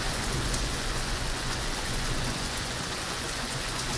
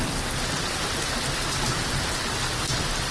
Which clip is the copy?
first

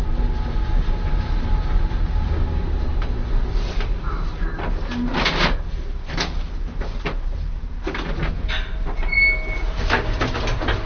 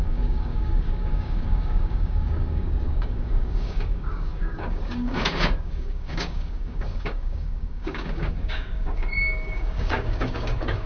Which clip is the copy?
second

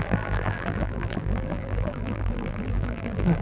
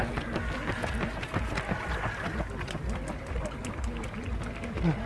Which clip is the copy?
first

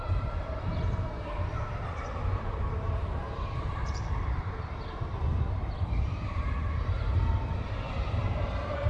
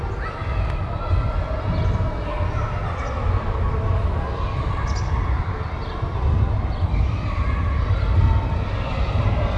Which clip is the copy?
first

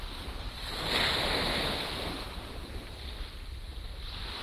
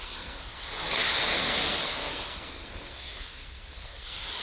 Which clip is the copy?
second